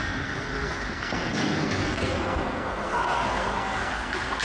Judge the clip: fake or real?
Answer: fake